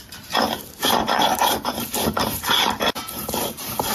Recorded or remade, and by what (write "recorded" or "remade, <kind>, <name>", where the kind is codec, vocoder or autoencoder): remade, vocoder, BigVGAN v2